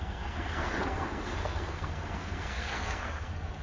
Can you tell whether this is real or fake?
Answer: fake